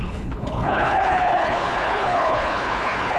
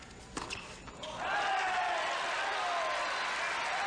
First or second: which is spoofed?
first